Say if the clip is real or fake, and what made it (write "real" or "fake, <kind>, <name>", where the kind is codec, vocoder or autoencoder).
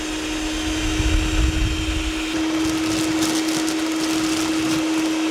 real